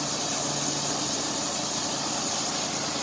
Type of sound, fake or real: real